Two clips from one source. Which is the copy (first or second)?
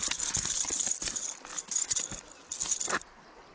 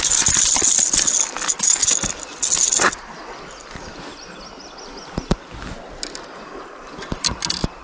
first